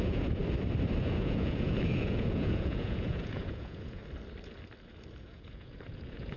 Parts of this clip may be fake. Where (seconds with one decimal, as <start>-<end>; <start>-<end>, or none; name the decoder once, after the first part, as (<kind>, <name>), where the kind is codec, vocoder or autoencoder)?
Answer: 0.0-0.4 (vocoder, Vocos); 1.0-4.0; 5.2-6.4